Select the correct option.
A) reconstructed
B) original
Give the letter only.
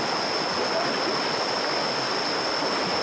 B